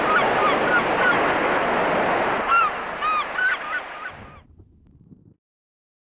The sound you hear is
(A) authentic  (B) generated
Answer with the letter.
B